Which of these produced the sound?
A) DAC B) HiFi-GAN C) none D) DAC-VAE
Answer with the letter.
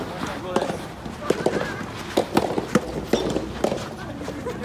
C